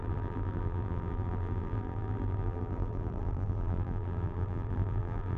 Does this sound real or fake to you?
fake